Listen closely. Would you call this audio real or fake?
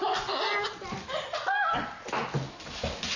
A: real